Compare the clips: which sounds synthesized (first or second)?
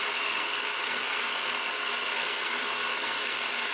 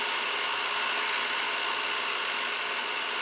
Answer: first